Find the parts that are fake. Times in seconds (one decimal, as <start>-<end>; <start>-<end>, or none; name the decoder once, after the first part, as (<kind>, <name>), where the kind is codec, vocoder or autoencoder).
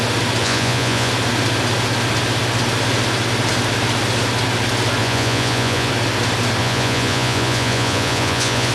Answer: 0.4-1.1 (vocoder, Vocos); 5.0-5.9; 6.6-8.7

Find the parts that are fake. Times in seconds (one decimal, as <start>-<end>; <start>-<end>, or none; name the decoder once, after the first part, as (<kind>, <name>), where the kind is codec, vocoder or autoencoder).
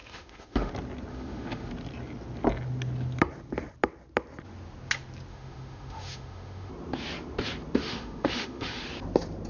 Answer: 0.0-0.7 (autoencoder, DAC-VAE); 1.1-1.7; 5.3-6.7; 7.8-8.8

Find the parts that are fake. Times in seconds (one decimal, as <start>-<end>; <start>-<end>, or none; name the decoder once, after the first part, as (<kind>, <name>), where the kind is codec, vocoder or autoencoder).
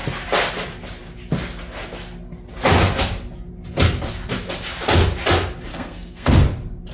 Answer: 5.7-6.3 (codec, SNAC)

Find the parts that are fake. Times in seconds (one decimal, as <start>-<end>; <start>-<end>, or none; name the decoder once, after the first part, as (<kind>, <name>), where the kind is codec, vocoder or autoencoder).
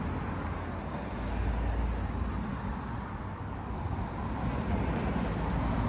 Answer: none